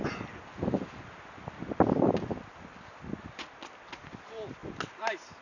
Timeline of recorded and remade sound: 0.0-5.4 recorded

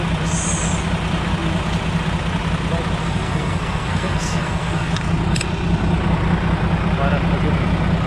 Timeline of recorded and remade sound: 0.0-3.0 recorded; 3.0-4.9 remade; 4.9-8.1 recorded

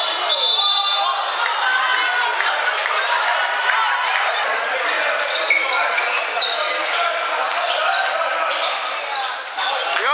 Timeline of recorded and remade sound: 0.0-10.1 recorded

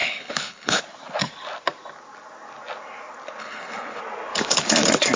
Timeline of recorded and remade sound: 0.0-0.8 remade; 0.8-3.4 recorded; 3.4-4.0 remade; 4.0-5.2 recorded

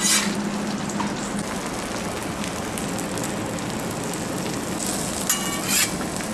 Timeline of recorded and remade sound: 0.0-6.3 recorded

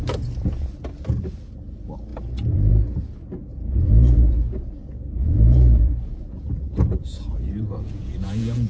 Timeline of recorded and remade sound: 0.0-3.5 recorded; 3.5-8.7 remade

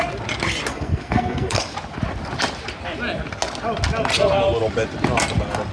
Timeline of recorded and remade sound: 0.0-0.7 recorded; 0.7-1.7 remade; 1.7-5.7 recorded